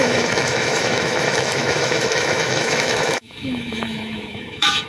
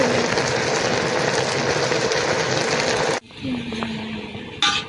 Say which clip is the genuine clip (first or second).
second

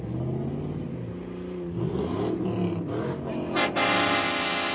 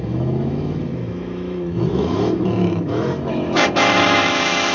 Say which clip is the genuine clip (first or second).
first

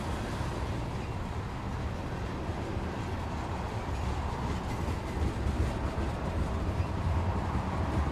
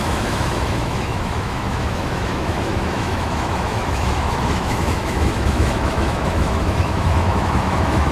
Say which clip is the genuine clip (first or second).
first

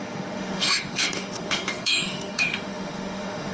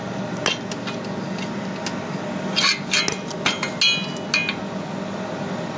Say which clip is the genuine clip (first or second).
second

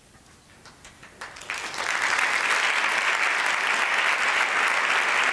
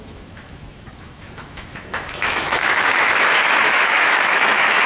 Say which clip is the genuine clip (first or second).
first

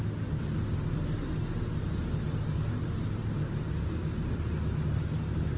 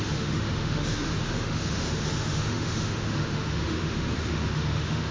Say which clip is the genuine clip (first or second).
first